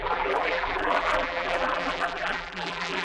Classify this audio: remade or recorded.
remade